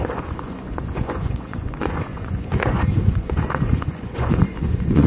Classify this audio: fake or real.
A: fake